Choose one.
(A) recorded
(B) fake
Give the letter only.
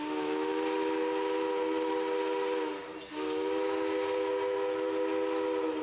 A